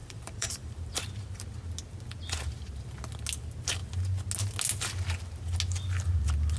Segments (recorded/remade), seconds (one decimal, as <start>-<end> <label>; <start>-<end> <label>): 0.0-1.0 remade; 1.0-6.6 recorded

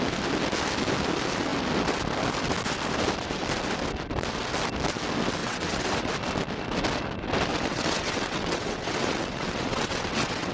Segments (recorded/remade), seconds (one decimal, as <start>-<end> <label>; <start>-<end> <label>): 0.0-5.4 recorded; 5.4-6.1 remade; 6.1-7.5 recorded; 7.5-10.5 remade

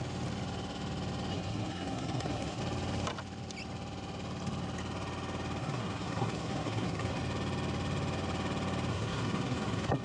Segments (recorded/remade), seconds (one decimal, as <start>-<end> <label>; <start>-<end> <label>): 0.0-1.3 recorded; 1.3-2.6 remade; 2.6-5.6 recorded; 5.6-7.2 remade; 7.2-8.9 recorded; 8.9-10.0 remade

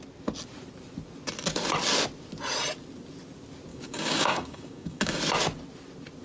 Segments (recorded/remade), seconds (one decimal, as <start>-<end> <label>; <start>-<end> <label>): 0.0-3.7 recorded; 3.7-5.2 remade; 5.2-6.2 recorded

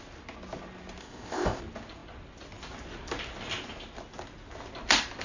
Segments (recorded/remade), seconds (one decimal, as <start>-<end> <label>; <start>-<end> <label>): 0.0-1.0 recorded; 1.0-1.6 remade; 1.6-5.2 recorded

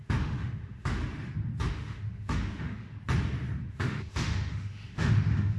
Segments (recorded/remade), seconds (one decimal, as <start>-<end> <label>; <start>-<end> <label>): 0.0-1.0 remade; 1.0-1.7 recorded; 1.7-2.9 remade; 2.9-3.7 recorded; 3.7-5.6 remade

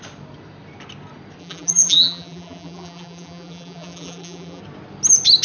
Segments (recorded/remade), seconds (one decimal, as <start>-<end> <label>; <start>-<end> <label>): 0.0-1.4 recorded; 1.4-4.6 remade; 4.6-5.4 recorded